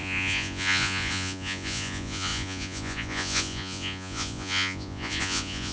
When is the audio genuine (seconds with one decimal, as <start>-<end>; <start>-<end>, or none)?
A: none